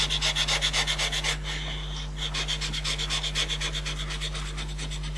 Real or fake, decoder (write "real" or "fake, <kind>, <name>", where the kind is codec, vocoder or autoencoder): real